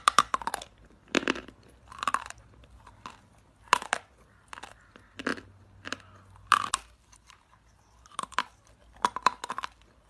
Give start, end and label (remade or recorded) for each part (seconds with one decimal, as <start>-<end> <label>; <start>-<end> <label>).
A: 0.0-10.1 remade